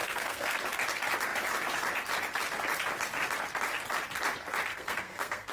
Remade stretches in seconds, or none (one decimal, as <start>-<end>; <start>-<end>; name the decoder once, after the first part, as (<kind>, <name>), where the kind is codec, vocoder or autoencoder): 0.0-0.6 (codec, SNAC); 4.7-5.5